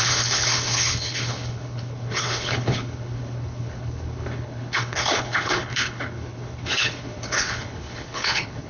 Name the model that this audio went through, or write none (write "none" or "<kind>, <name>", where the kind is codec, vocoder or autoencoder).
codec, HILCodec